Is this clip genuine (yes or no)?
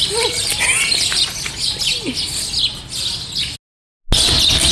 yes